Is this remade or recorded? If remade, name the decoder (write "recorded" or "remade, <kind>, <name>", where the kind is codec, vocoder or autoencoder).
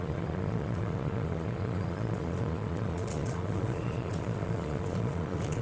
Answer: remade, vocoder, Vocos